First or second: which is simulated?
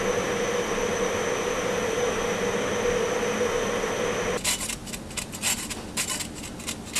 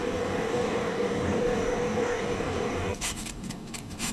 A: second